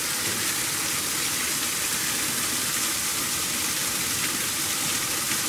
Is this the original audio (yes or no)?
yes